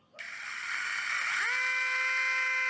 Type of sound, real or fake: real